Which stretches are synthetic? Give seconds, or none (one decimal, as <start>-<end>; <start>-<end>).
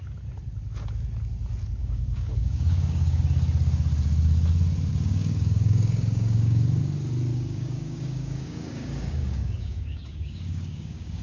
1.8-3.2; 4.9-6.8; 7.3-11.2